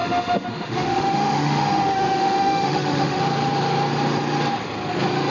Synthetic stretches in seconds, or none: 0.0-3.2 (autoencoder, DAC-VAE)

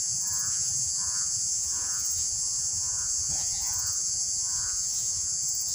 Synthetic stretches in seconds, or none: 0.0-5.7 (vocoder, Vocos)

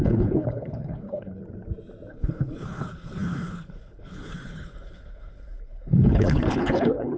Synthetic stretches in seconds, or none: 0.0-1.4 (codec, HILCodec); 2.1-7.2

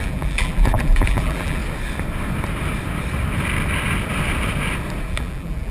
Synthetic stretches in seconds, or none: 0.0-1.6 (vocoder, BigVGAN v2); 5.0-5.7

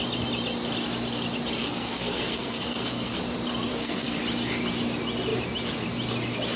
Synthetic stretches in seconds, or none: 1.6-3.2 (codec, SNAC); 3.7-4.2